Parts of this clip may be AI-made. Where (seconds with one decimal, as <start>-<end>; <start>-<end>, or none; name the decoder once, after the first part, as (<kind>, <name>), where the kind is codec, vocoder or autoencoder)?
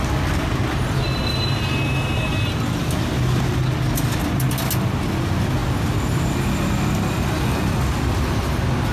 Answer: none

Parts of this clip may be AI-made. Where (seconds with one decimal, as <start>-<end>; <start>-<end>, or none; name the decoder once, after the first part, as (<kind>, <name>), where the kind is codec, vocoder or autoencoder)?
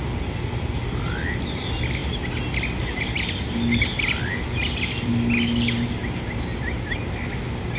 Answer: none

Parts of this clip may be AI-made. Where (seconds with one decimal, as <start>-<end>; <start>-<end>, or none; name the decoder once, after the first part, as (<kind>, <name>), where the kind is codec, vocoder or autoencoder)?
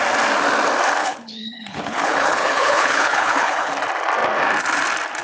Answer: 1.0-3.7 (codec, HILCodec)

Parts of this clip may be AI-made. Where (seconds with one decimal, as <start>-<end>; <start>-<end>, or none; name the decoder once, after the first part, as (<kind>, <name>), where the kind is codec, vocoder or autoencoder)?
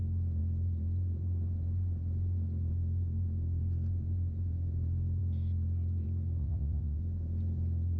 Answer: 6.4-7.0 (vocoder, WaveNeXt)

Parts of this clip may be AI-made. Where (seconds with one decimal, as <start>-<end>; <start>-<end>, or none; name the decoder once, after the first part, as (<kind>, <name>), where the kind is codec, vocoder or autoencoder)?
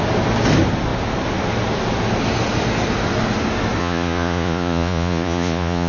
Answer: 3.8-5.9 (vocoder, Vocos)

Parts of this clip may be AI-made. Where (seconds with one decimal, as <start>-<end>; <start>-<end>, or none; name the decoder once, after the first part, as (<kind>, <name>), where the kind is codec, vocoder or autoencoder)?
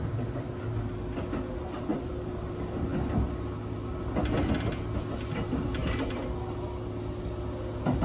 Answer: 1.9-2.5 (vocoder, BigVGAN v2)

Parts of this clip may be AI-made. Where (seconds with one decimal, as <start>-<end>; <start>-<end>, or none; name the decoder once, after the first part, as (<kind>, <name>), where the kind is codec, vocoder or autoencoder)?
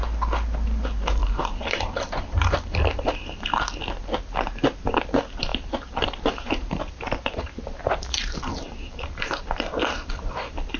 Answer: 1.2-3.6 (vocoder, BigVGAN v2); 5.5-9.4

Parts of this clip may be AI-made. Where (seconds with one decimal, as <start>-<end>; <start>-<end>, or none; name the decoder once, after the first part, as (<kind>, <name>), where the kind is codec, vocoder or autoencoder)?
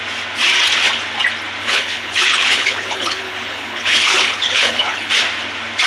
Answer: 1.6-5.1 (codec, HILCodec)